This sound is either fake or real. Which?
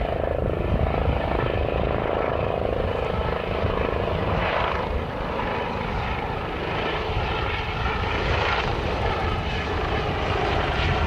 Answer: real